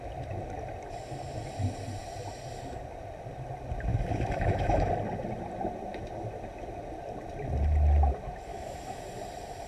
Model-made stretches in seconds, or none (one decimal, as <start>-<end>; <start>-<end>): 3.9-4.9; 8.5-9.0